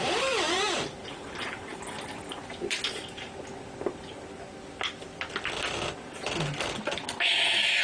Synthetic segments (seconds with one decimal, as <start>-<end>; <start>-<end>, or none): none